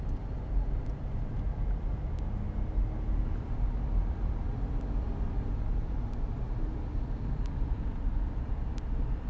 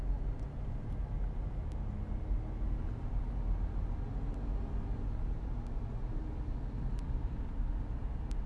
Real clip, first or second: second